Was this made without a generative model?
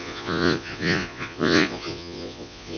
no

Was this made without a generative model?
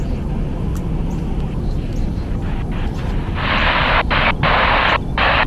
yes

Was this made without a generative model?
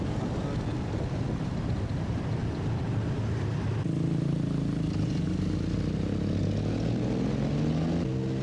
yes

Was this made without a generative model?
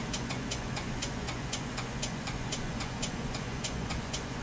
no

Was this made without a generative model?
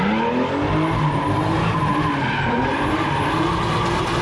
yes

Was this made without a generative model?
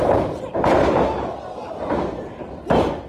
yes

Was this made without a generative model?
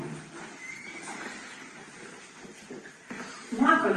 no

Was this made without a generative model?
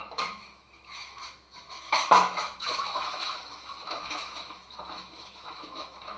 no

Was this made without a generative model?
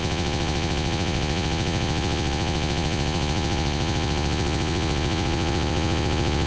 no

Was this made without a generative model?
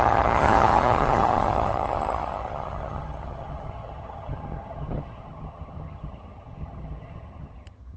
no